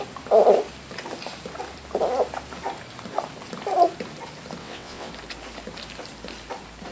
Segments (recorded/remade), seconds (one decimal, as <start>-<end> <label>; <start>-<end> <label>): 0.0-4.6 recorded; 4.6-5.1 remade; 5.1-6.9 recorded